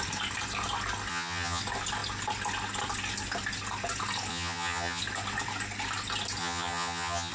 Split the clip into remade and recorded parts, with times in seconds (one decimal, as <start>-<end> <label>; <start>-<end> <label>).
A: 0.0-1.1 recorded; 1.1-1.6 remade; 1.6-4.3 recorded; 4.3-5.0 remade; 5.0-6.4 recorded; 6.4-7.3 remade